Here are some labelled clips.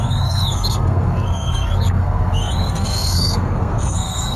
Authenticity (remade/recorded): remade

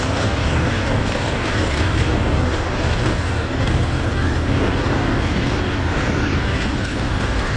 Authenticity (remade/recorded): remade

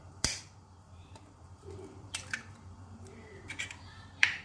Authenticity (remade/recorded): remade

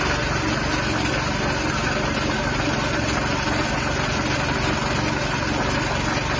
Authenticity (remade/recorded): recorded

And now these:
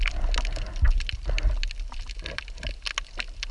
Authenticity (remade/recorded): recorded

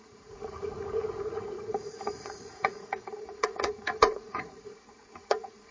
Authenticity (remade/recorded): remade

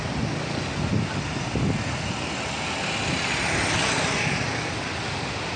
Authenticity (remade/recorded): recorded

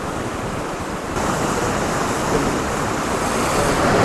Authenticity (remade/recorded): remade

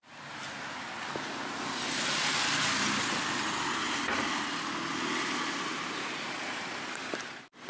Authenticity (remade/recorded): recorded